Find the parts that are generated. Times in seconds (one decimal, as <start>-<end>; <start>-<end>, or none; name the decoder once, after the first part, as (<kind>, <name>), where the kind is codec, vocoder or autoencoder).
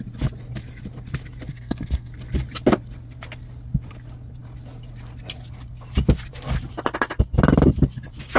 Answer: 1.5-2.1 (codec, SNAC)